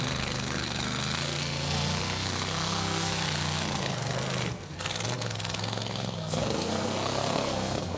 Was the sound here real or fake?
fake